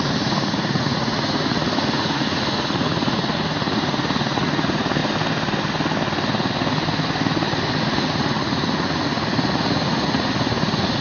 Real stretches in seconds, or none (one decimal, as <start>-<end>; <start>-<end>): 5.0-7.8